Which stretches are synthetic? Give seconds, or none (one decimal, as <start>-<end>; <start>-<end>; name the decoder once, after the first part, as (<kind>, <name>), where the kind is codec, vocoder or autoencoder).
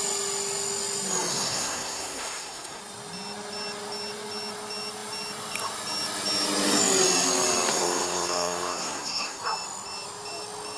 1.3-2.8 (codec, SNAC); 7.7-9.4